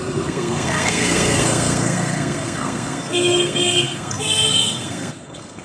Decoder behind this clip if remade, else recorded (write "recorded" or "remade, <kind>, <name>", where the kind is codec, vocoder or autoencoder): remade, codec, SNAC